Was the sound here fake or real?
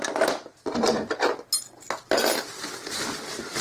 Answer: real